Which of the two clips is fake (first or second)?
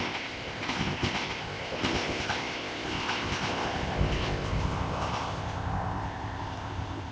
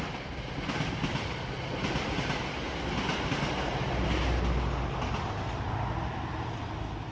first